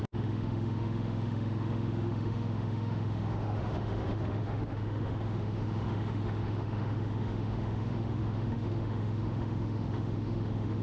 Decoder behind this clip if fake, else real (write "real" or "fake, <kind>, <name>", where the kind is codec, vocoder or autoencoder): fake, autoencoder, DAC-VAE